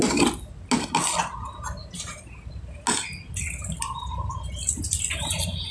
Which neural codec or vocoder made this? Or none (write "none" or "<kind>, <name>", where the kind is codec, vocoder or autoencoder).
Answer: none